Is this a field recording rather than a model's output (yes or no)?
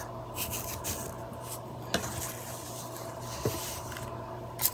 yes